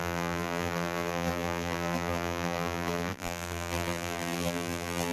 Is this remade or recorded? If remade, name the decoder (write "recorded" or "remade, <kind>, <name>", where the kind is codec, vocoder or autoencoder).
remade, vocoder, BigVGAN v2